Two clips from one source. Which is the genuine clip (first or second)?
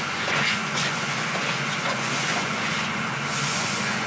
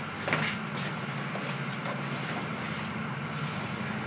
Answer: second